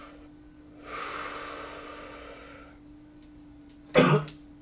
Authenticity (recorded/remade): recorded